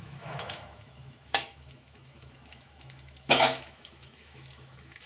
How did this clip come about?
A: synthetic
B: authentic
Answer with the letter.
A